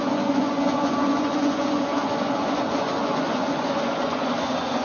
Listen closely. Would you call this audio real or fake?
fake